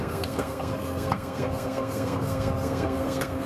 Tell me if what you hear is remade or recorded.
remade